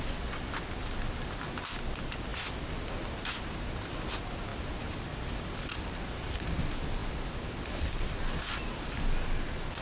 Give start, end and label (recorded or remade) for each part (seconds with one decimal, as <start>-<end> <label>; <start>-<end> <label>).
0.0-9.8 recorded